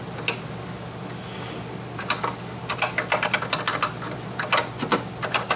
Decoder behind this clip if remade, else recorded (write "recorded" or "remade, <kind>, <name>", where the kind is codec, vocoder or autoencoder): recorded